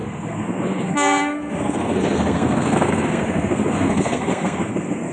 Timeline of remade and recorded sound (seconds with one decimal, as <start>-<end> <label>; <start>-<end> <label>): 0.0-5.1 remade